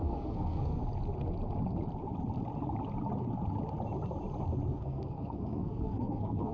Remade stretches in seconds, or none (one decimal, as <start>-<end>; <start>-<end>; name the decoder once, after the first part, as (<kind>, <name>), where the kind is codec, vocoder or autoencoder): 0.0-0.8 (codec, SNAC); 4.7-6.5